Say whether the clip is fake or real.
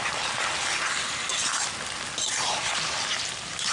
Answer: real